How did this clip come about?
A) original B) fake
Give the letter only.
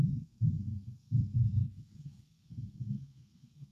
B